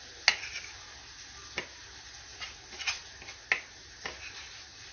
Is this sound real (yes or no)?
yes